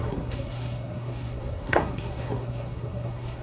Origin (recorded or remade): remade